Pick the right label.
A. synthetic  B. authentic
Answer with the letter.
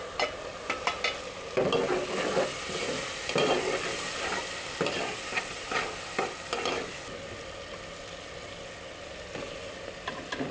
B